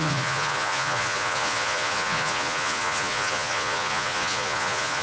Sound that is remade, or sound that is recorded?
remade